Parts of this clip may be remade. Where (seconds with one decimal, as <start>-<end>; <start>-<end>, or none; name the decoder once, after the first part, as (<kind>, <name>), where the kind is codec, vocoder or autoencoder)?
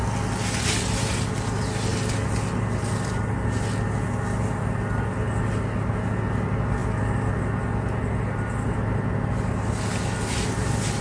none